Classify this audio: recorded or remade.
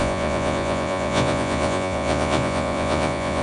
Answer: remade